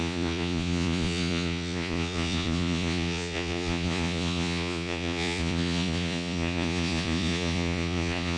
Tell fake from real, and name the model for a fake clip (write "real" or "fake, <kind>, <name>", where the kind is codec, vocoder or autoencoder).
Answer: fake, vocoder, Vocos